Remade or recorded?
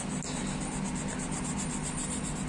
recorded